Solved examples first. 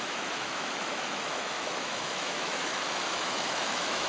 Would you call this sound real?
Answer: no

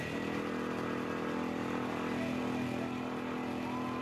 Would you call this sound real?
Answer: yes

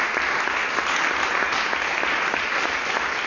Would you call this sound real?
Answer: yes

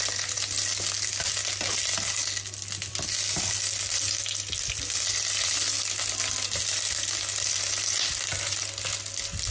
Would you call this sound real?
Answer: yes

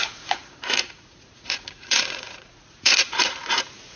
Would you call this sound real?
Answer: no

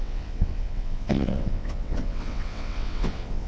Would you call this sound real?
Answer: no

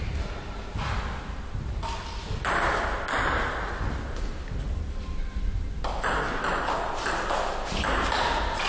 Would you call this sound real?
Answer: yes